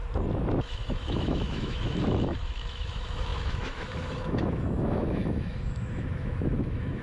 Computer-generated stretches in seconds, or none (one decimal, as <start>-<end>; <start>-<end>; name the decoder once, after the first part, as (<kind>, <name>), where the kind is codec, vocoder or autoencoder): 0.6-7.0 (autoencoder, DAC-VAE)